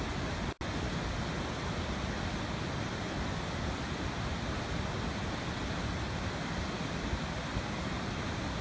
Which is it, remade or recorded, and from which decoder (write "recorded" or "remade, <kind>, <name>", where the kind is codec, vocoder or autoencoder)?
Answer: recorded